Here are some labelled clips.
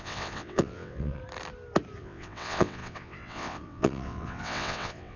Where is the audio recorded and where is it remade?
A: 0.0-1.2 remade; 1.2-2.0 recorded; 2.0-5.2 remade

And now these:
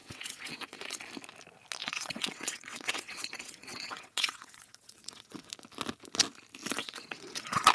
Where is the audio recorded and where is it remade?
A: 0.0-1.0 remade; 1.0-1.8 recorded; 1.8-5.5 remade; 5.5-6.8 recorded; 6.8-7.7 remade

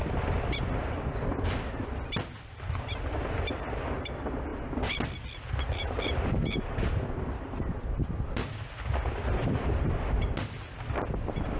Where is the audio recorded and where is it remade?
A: 0.0-11.6 recorded

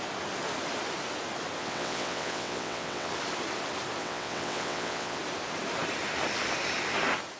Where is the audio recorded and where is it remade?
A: 0.0-1.6 recorded; 1.6-3.1 remade; 3.1-4.0 recorded; 4.0-5.2 remade; 5.2-7.4 recorded

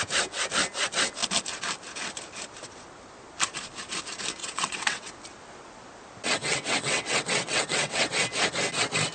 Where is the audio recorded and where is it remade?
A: 0.0-4.4 recorded; 4.4-5.1 remade; 5.1-6.4 recorded; 6.4-8.2 remade; 8.2-9.1 recorded

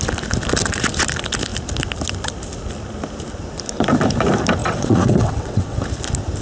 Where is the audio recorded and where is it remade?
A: 0.0-4.6 recorded; 4.6-5.8 remade; 5.8-6.4 recorded